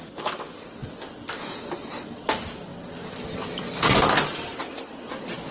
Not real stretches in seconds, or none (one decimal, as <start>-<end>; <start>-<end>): none

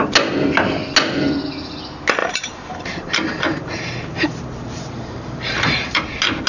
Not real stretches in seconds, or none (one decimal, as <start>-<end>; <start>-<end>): 2.2-6.1

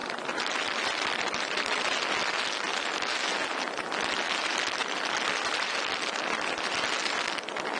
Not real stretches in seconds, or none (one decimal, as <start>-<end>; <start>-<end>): 0.0-1.9; 4.8-6.8

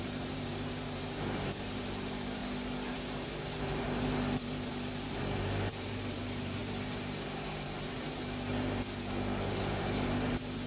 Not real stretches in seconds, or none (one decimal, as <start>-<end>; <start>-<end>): 0.0-2.4; 2.9-10.7

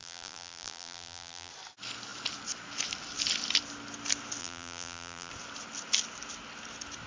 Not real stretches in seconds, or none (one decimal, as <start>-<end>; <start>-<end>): 0.0-1.5; 4.4-5.3